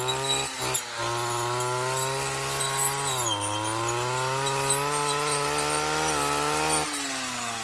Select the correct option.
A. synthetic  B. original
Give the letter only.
B